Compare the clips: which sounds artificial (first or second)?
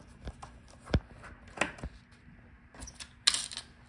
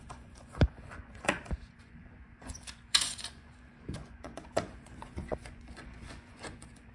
second